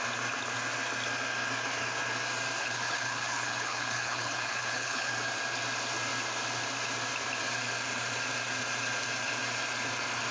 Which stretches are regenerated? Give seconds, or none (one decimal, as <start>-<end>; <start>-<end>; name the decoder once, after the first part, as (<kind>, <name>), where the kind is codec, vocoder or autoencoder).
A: 2.6-5.1 (codec, HILCodec)